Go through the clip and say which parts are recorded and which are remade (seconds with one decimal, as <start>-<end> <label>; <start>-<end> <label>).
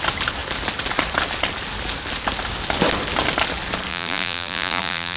0.0-3.9 recorded; 3.9-5.2 remade